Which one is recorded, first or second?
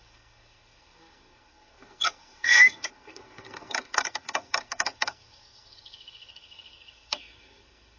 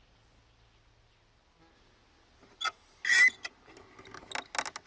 second